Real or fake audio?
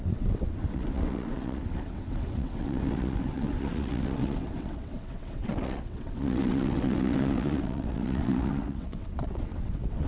fake